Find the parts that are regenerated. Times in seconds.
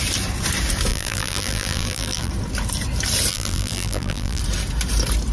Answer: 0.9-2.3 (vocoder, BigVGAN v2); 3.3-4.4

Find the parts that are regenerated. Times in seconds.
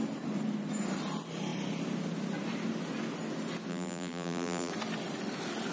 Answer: 3.7-4.7 (vocoder, BigVGAN v2)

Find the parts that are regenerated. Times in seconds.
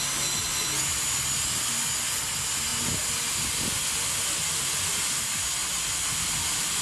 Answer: none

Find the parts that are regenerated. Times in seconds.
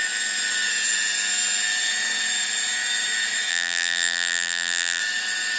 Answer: 3.5-5.0 (vocoder, BigVGAN v2)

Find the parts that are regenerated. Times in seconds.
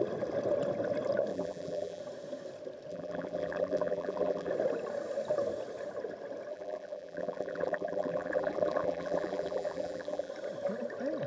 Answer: 1.3-2.0 (vocoder, BigVGAN v2); 2.9-4.5; 6.5-10.3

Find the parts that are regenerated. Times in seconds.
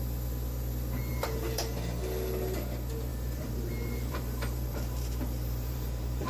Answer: 1.1-1.6 (vocoder, BigVGAN v2); 3.1-6.3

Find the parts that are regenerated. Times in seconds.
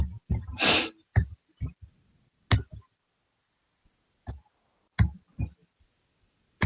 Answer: 5.6-6.7 (vocoder, BigVGAN v2)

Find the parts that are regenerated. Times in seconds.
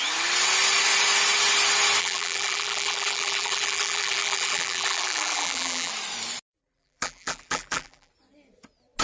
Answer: 2.0-5.9 (vocoder, BigVGAN v2); 6.6-8.1